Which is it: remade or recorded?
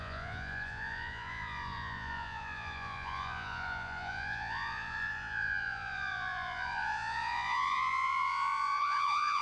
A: remade